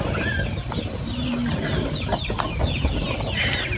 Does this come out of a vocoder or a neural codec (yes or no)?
no